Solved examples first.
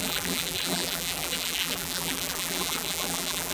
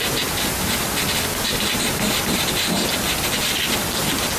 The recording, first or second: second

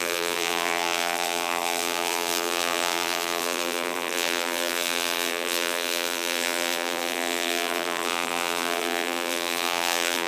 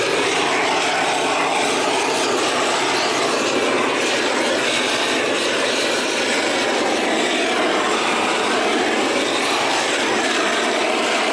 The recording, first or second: second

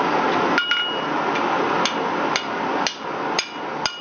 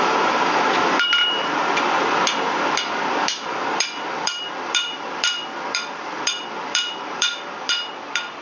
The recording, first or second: first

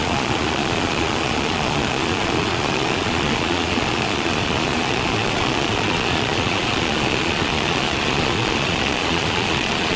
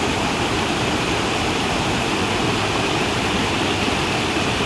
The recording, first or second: second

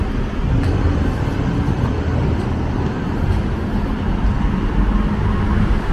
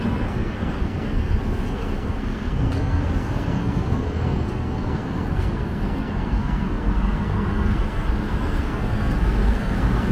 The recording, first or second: first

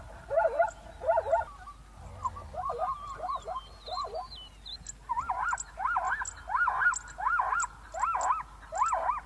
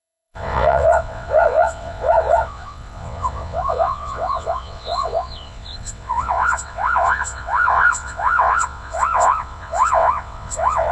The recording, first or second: first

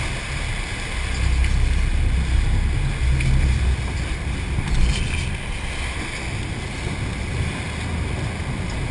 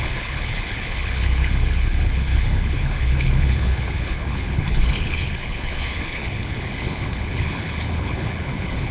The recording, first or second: first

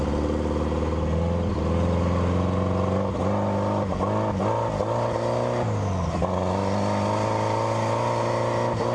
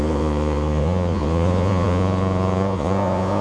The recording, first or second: first